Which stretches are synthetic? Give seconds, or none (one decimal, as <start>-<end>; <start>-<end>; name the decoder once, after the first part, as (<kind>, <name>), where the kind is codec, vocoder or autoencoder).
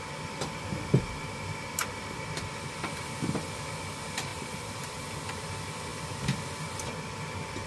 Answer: 4.3-5.2 (vocoder, BigVGAN v2)